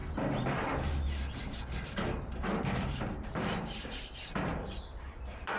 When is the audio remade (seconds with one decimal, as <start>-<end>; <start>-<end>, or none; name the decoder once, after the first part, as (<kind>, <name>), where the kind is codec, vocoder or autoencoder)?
0.0-5.6 (vocoder, BigVGAN v2)